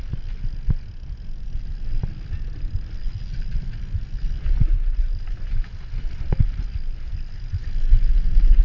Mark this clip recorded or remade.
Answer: recorded